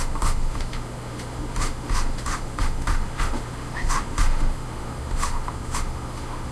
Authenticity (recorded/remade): remade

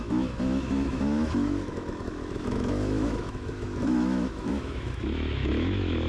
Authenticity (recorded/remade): remade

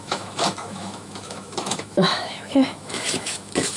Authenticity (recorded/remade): remade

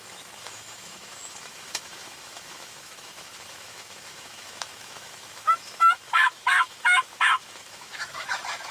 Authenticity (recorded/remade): remade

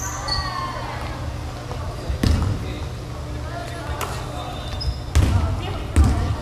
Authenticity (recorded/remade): recorded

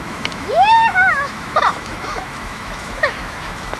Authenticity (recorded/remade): remade